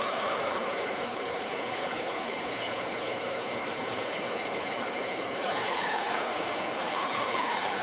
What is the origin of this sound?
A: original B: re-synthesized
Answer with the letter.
B